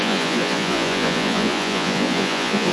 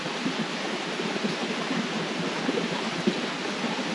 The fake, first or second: first